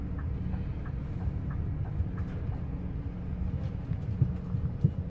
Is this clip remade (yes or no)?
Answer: no